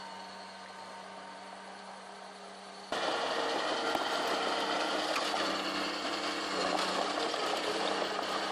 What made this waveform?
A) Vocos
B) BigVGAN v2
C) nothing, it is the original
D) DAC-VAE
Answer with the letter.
C